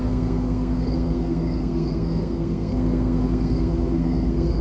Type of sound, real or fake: fake